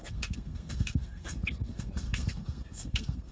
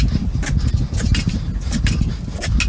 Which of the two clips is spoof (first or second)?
first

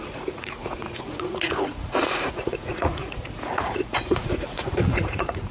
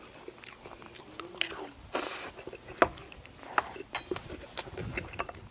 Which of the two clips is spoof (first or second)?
first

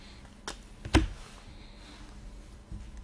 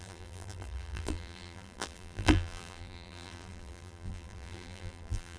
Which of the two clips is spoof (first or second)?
second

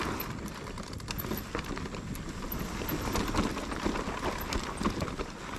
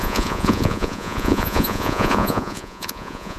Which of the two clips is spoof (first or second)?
second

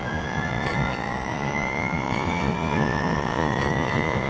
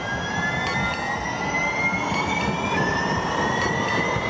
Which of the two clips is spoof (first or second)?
first